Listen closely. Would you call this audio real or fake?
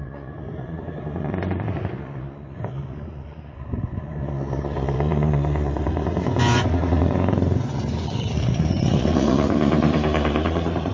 fake